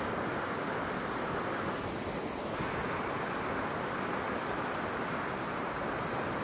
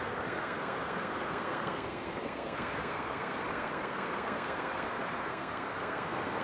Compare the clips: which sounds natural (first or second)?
first